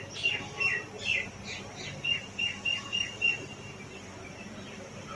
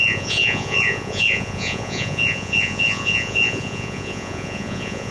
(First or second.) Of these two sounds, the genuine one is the first